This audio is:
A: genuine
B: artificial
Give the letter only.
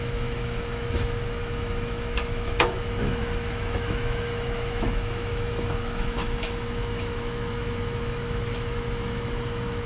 B